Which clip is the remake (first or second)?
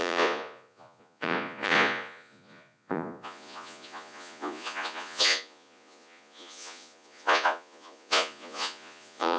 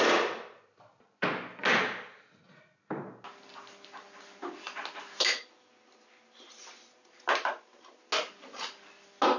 first